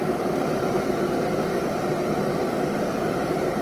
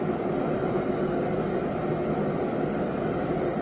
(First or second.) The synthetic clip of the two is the first